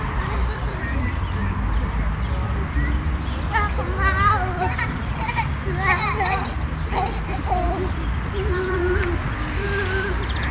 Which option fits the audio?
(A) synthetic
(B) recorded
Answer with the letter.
B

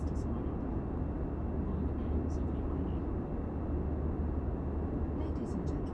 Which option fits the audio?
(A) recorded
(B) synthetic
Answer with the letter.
A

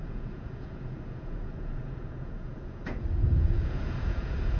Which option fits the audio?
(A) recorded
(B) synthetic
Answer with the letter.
B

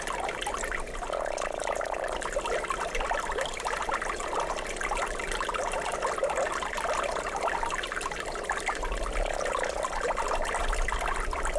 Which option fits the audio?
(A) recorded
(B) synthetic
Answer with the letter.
A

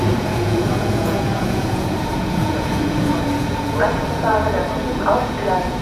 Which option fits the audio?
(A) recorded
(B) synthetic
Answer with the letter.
B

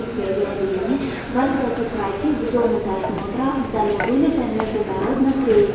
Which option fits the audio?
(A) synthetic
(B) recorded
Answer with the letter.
B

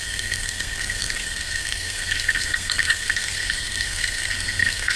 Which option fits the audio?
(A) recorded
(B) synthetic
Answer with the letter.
B